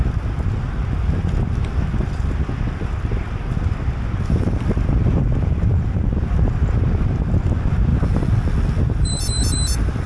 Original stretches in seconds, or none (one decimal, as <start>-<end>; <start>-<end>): 7.9-8.8